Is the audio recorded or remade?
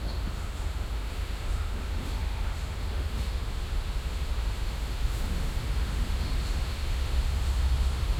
remade